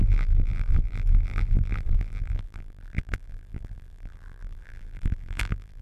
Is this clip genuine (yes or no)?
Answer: no